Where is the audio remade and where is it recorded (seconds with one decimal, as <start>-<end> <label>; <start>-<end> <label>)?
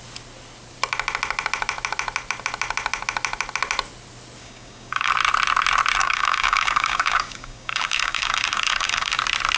0.0-4.4 recorded; 4.4-5.1 remade; 5.1-6.0 recorded; 6.0-9.2 remade; 9.2-9.6 recorded